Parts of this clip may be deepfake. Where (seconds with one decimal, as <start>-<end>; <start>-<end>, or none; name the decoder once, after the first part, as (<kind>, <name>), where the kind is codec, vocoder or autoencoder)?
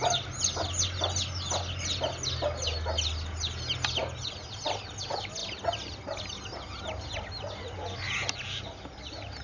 none